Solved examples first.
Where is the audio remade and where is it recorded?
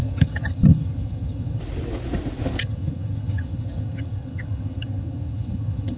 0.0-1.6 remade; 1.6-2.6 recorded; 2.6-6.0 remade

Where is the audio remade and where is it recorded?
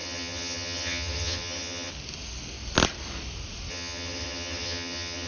0.0-1.9 remade; 1.9-3.7 recorded; 3.7-5.3 remade